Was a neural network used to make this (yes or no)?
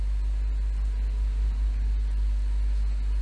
no